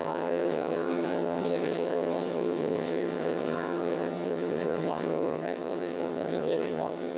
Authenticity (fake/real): fake